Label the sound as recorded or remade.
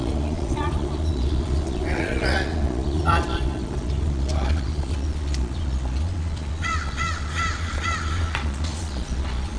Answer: remade